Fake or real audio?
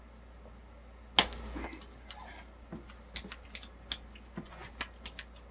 real